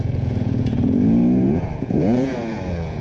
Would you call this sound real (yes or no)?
no